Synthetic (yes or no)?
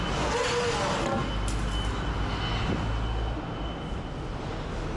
no